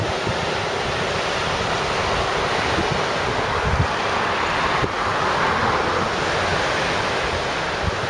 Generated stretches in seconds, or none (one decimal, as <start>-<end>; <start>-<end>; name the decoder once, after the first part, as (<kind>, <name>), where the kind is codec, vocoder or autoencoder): none